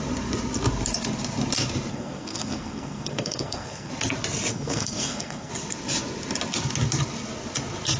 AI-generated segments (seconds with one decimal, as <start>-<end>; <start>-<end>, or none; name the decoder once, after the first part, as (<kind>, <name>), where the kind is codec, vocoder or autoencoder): 1.9-3.9 (codec, SNAC); 4.5-5.5